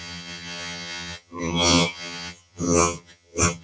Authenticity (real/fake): fake